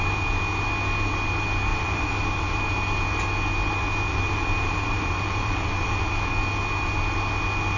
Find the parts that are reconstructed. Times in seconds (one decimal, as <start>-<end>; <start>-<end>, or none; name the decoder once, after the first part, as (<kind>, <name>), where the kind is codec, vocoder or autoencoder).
1.7-2.6 (vocoder, BigVGAN v2); 4.1-6.3